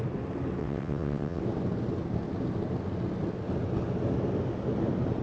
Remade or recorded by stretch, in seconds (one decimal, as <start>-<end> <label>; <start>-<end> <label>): 0.0-0.6 recorded; 0.6-1.4 remade; 1.4-5.2 recorded